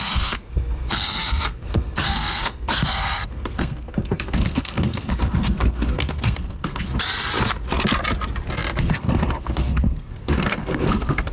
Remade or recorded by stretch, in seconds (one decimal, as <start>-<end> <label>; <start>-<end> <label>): 0.0-6.9 remade; 6.9-8.8 recorded; 8.8-11.3 remade